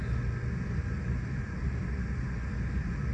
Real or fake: real